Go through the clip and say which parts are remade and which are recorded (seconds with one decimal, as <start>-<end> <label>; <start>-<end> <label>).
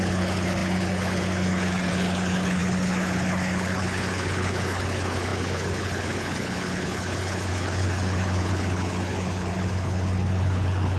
0.0-11.0 remade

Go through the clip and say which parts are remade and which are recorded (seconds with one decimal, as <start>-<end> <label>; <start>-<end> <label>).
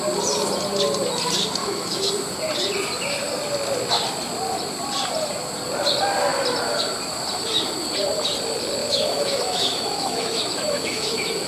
0.0-1.6 recorded; 1.6-2.1 remade; 2.1-8.8 recorded; 8.8-11.5 remade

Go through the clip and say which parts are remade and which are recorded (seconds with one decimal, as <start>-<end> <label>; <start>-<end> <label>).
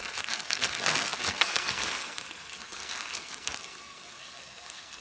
0.0-5.0 remade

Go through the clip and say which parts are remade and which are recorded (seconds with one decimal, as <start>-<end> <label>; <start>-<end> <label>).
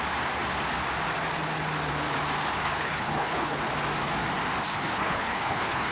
0.0-2.6 recorded; 2.6-3.6 remade; 3.6-4.7 recorded; 4.7-5.9 remade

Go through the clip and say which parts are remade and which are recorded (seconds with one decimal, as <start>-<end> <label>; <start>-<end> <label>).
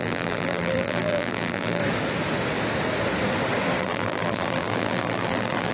0.0-1.8 remade; 1.8-3.8 recorded; 3.8-5.7 remade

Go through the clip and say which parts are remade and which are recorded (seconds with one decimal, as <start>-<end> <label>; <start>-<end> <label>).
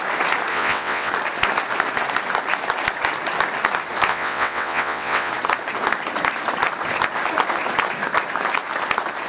0.0-0.5 recorded; 0.5-1.1 remade; 1.1-4.1 recorded; 4.1-5.3 remade; 5.3-9.3 recorded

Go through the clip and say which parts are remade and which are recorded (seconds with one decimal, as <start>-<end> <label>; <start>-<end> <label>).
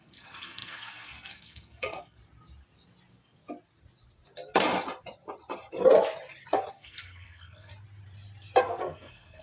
0.0-2.2 remade; 2.2-6.7 recorded; 6.7-7.7 remade; 7.7-8.6 recorded; 8.6-9.4 remade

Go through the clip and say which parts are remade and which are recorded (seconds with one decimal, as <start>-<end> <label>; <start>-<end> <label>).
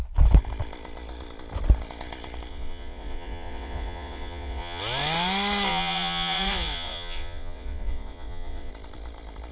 0.0-2.5 recorded; 2.5-4.8 remade; 4.8-5.7 recorded; 5.7-8.7 remade; 8.7-9.5 recorded